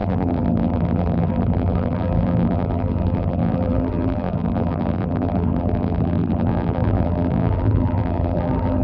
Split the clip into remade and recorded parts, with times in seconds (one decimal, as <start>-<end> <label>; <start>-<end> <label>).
0.0-8.8 remade